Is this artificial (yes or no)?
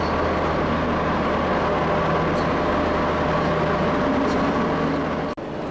no